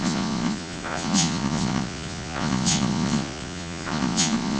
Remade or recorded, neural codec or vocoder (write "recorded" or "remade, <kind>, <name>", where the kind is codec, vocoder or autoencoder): remade, vocoder, Vocos